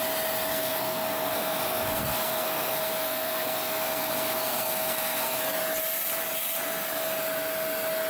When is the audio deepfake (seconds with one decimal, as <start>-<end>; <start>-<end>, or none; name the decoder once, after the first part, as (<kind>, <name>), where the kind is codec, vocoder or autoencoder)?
0.5-5.4 (codec, SNAC)